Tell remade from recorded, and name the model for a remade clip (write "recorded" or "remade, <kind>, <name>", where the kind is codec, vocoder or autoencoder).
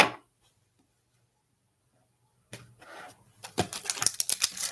remade, vocoder, BigVGAN v2